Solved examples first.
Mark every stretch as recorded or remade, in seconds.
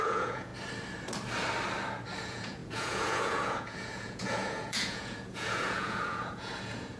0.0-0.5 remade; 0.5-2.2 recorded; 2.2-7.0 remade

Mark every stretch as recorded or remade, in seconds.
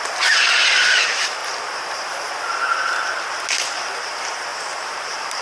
0.0-1.4 remade; 1.4-4.0 recorded; 4.0-5.4 remade